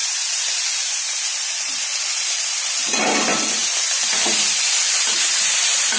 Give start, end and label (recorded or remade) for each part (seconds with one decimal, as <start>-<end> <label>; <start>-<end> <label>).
0.0-6.0 remade